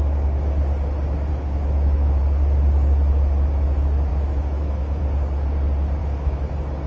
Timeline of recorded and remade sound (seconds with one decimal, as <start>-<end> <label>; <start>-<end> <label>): 0.0-1.3 recorded; 1.3-2.2 remade; 2.2-4.1 recorded; 4.1-5.0 remade; 5.0-6.0 recorded; 6.0-6.5 remade; 6.5-6.9 recorded